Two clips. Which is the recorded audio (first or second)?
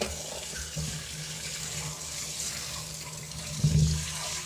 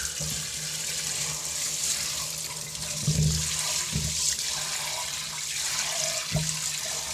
second